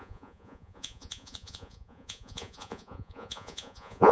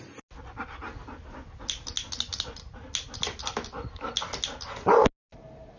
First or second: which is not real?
first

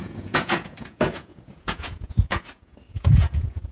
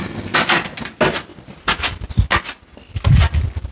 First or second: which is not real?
first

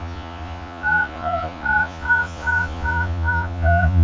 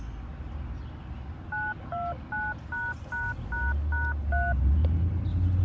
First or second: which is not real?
first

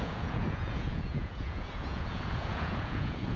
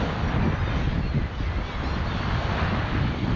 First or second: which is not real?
first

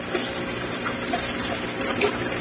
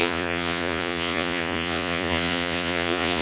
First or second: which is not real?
second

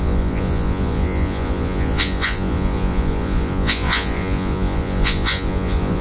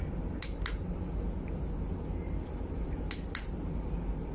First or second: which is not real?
first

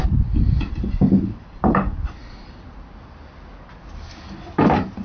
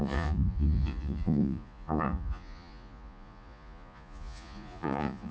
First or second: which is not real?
second